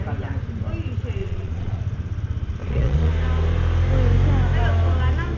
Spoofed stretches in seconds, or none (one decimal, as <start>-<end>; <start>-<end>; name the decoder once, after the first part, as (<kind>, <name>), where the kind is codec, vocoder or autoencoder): 1.2-1.8 (vocoder, Vocos); 2.6-3.1